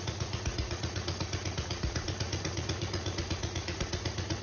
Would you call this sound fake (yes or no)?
yes